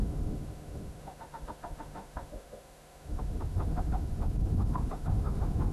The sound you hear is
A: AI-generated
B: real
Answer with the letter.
A